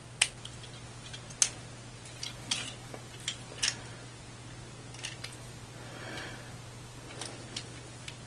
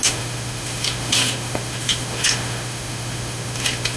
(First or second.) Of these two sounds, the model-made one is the second